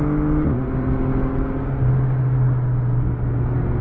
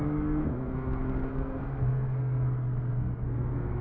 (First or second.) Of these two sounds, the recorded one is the first